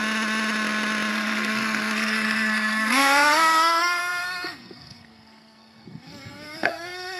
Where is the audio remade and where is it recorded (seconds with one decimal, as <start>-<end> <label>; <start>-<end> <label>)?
0.0-1.1 recorded; 1.1-7.2 remade